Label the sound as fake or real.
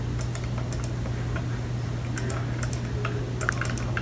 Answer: real